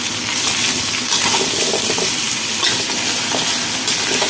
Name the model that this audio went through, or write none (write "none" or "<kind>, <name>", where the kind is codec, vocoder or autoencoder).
none